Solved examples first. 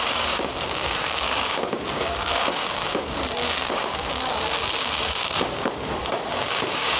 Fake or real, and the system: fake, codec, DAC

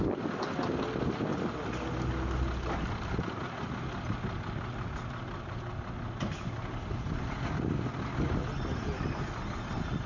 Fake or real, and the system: real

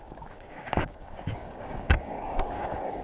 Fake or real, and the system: fake, codec, DAC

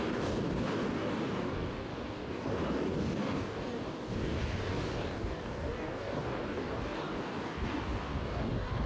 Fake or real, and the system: fake, codec, DAC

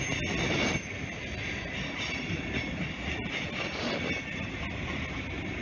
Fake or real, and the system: real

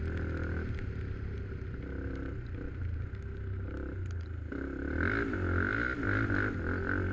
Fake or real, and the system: real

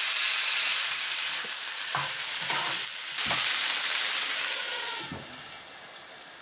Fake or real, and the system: real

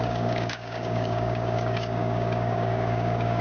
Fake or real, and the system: fake, codec, DAC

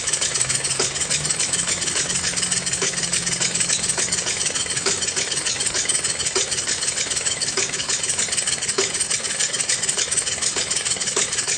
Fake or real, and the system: fake, codec, DAC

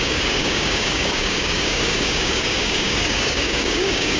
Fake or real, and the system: fake, codec, DAC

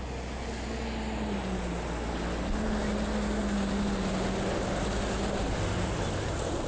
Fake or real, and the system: real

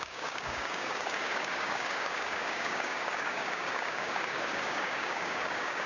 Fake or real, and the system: fake, codec, DAC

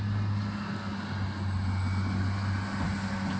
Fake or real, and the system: real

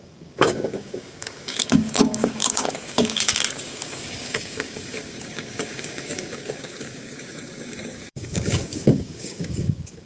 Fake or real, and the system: fake, codec, DAC